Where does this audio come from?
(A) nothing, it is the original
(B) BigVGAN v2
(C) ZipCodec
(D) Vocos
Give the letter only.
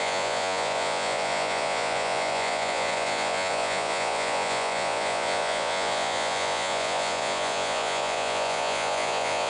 D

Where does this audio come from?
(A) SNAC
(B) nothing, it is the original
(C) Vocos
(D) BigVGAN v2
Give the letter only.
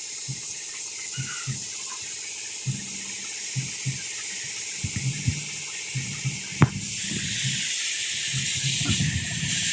B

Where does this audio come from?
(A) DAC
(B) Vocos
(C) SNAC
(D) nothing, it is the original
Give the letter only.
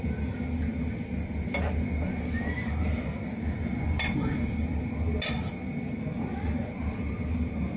D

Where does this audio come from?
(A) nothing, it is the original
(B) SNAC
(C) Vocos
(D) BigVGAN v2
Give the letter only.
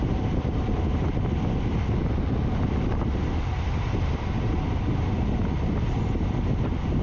A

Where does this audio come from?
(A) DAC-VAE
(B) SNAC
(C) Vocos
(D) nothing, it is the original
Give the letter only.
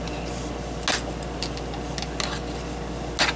D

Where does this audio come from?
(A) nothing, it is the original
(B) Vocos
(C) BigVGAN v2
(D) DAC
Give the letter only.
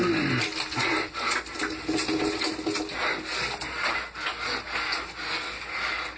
A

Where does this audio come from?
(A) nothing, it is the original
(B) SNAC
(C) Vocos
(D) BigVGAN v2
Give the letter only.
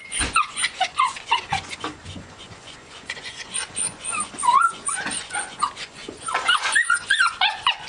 C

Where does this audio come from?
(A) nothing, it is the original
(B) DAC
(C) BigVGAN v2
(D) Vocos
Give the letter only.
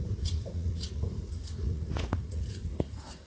D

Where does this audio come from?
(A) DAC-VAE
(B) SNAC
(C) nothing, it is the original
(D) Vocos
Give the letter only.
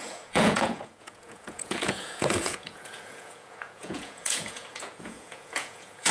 D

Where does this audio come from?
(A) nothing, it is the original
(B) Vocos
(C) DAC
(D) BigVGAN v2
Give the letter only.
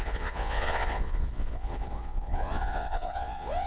B